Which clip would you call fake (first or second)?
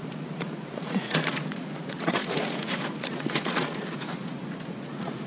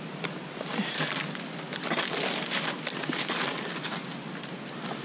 first